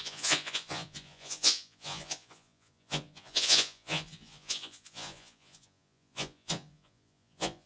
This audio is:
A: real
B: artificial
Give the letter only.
B